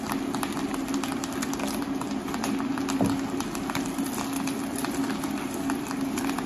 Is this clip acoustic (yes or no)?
yes